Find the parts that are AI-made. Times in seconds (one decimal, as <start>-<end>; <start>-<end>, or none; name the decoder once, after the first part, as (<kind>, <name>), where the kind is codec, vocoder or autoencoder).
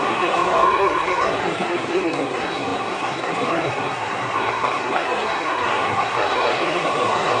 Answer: 0.0-7.4 (codec, SNAC)